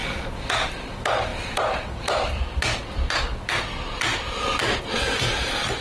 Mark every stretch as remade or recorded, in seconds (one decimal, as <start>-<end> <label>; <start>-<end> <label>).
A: 0.0-5.8 recorded